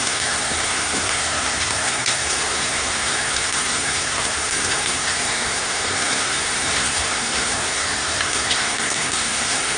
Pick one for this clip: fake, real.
fake